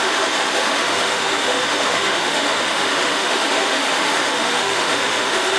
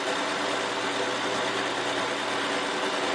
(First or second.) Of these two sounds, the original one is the second